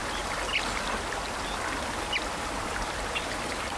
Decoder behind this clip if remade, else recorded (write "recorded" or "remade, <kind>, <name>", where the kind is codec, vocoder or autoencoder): recorded